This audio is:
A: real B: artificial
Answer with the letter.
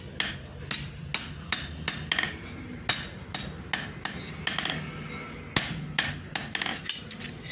A